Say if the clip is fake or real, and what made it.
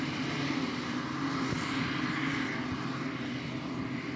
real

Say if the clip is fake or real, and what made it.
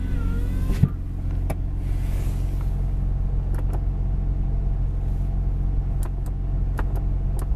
real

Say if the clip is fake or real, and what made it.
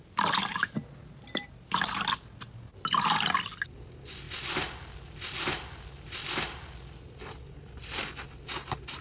real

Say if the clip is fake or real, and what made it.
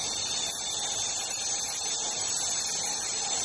fake, vocoder, BigVGAN v2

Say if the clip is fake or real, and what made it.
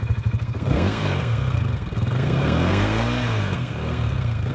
fake, codec, SNAC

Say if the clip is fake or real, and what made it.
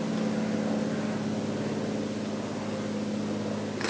real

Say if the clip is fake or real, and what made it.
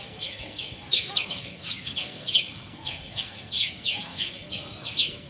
fake, codec, SNAC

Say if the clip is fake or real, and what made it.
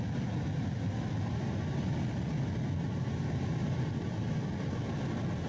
real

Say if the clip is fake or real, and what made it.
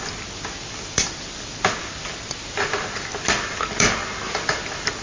real